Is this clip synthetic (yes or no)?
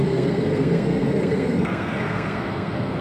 yes